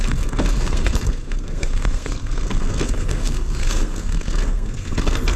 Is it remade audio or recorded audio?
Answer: remade